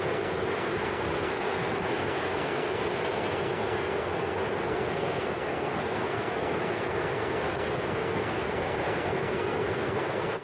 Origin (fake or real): fake